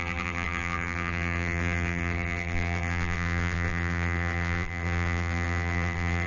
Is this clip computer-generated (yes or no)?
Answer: yes